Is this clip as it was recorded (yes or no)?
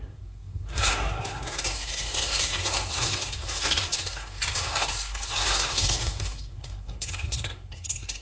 no